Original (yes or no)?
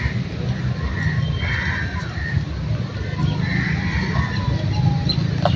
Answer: yes